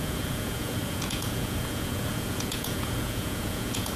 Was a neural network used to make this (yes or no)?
yes